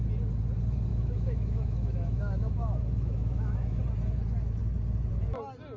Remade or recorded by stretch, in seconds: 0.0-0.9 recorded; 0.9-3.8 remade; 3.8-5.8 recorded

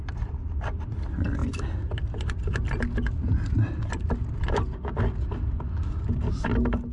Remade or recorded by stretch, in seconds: 0.0-6.9 recorded

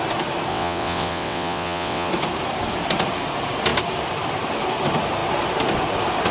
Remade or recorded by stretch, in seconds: 0.0-0.5 recorded; 0.5-2.1 remade; 2.1-6.3 recorded

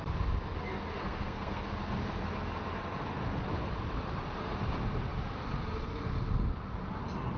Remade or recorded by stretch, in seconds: 0.0-1.0 recorded; 1.0-1.6 remade; 1.6-7.4 recorded